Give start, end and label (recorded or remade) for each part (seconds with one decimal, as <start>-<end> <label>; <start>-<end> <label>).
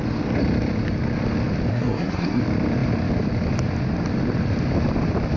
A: 0.0-1.7 recorded; 1.7-2.4 remade; 2.4-5.4 recorded